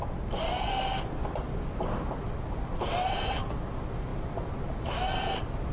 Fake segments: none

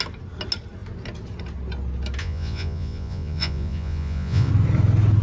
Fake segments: 2.2-4.5 (vocoder, Vocos)

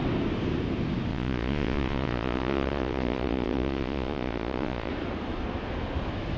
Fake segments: 1.1-4.9 (vocoder, Vocos)

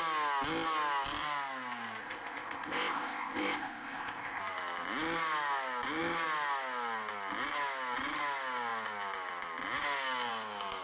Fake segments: 2.0-4.4 (codec, ZipCodec)